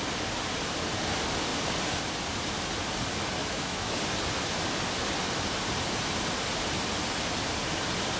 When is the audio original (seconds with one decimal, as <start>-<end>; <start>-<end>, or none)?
0.0-3.4; 4.0-8.2